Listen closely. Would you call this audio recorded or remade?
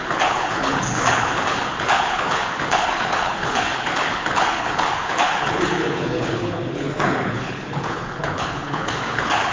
remade